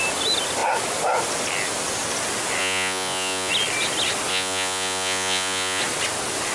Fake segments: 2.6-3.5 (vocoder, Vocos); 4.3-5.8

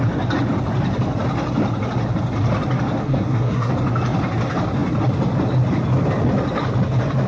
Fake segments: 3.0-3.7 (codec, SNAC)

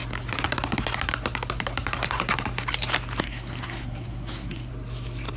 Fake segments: 3.2-4.7 (codec, SNAC)

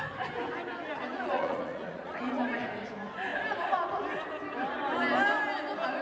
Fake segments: 1.1-2.2 (vocoder, Vocos)

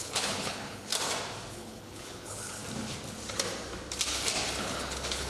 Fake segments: 0.0-0.9 (codec, HILCodec); 1.5-2.6; 4.6-5.3

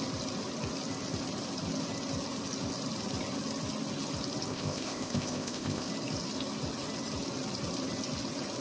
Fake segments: 4.5-5.9 (codec, ZipCodec)

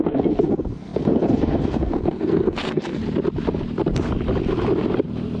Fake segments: 0.0-3.0 (codec, SNAC)

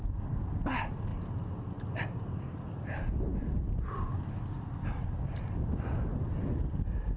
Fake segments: none